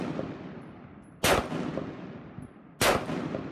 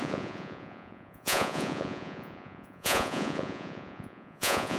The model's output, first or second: second